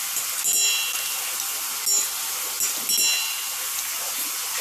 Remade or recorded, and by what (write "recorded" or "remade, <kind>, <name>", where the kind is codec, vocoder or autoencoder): recorded